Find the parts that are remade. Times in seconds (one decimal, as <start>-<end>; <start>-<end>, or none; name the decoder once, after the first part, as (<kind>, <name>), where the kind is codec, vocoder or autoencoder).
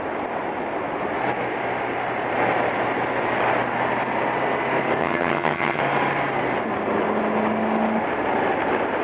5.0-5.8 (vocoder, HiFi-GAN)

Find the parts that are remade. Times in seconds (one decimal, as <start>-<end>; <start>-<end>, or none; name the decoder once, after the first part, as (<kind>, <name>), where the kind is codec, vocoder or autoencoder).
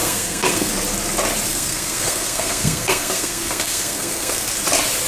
0.0-0.7 (codec, SNAC); 1.5-4.4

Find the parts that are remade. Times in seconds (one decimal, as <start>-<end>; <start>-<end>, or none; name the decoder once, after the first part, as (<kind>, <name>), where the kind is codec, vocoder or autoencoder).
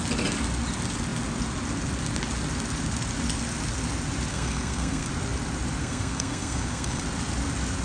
4.3-5.1 (codec, SNAC); 5.8-7.0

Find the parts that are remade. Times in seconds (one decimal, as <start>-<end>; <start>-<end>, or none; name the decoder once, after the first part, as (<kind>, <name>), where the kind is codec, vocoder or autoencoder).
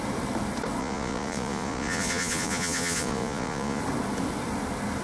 0.8-3.8 (vocoder, Vocos)